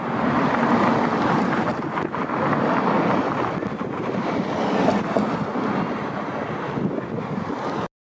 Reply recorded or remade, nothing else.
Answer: recorded